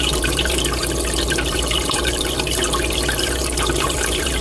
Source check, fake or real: fake